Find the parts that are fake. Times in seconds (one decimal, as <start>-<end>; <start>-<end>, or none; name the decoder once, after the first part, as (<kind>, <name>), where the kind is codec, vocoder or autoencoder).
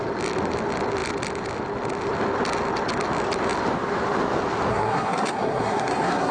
4.7-6.3 (codec, SNAC)